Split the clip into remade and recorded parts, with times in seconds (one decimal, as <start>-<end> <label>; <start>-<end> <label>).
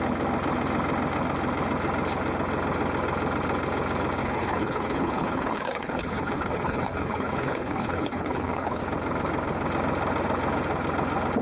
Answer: 0.0-4.2 recorded; 4.2-8.8 remade; 8.8-11.4 recorded